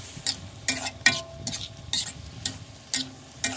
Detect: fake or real real